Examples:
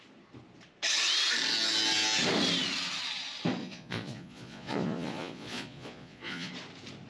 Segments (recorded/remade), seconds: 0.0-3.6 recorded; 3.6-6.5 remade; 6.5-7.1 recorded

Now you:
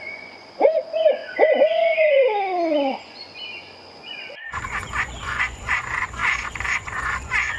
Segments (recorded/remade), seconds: 0.0-7.6 remade

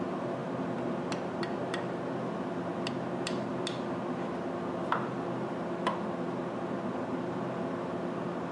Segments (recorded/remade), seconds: 0.0-8.5 recorded

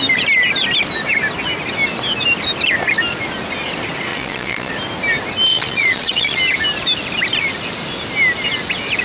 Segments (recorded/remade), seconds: 0.0-4.1 recorded; 4.1-4.7 remade; 4.7-5.5 recorded; 5.5-6.4 remade; 6.4-9.0 recorded

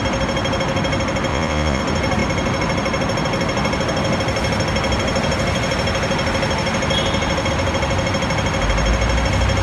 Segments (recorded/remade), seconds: 0.0-1.3 recorded; 1.3-1.8 remade; 1.8-9.6 recorded

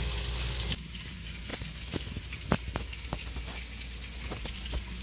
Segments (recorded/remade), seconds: 0.0-5.0 recorded